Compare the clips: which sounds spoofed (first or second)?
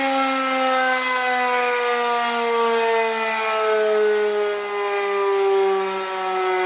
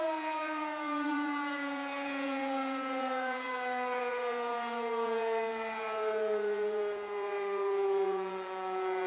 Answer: second